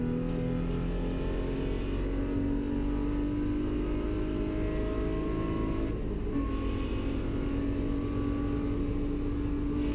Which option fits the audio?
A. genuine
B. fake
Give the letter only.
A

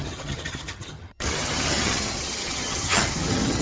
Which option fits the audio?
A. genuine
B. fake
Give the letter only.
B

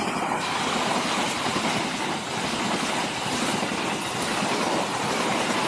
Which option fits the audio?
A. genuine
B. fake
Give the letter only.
A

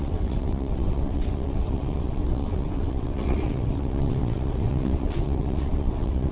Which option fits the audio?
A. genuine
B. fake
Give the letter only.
B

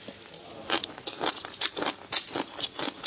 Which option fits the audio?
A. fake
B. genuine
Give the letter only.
B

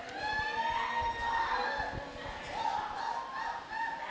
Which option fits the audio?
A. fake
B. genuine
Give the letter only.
B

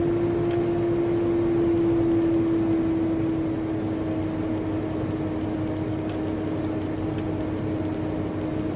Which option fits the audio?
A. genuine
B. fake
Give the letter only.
A